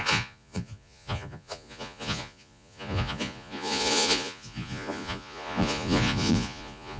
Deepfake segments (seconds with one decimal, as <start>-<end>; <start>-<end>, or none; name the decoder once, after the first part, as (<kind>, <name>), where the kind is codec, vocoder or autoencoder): 0.0-7.0 (vocoder, Vocos)